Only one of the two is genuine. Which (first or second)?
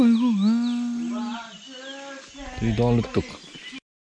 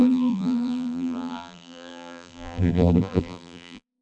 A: first